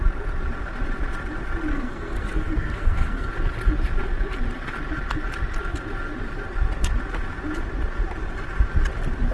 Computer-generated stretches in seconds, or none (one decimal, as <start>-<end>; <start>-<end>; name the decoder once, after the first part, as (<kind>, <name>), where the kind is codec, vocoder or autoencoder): 1.7-3.3 (codec, SNAC)